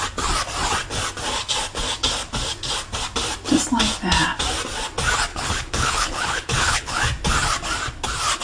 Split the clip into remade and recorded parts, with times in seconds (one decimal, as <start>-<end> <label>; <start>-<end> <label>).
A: 0.0-5.3 recorded; 5.3-7.0 remade; 7.0-8.4 recorded